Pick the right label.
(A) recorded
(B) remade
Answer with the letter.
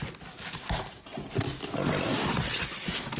A